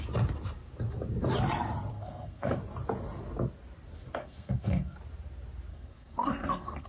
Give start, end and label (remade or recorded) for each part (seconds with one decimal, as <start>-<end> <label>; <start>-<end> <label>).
0.0-1.9 recorded; 1.9-2.6 remade; 2.6-4.2 recorded; 4.2-5.0 remade; 5.0-5.7 recorded; 5.7-6.9 remade